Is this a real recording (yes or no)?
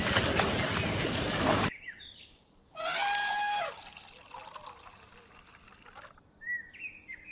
yes